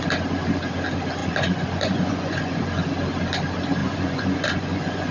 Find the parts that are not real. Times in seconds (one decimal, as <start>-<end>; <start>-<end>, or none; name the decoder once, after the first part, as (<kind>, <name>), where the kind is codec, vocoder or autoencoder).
1.2-2.6 (vocoder, Vocos); 3.8-5.1